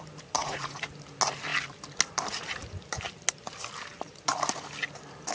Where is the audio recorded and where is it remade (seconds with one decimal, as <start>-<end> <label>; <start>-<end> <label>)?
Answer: 0.0-0.4 recorded; 0.4-0.9 remade; 0.9-5.3 recorded